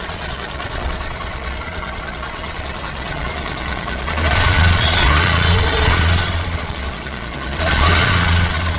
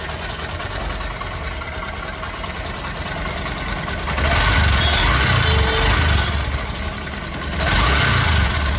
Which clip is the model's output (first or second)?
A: first